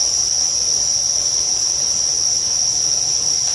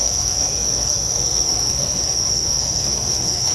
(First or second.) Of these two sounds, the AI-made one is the second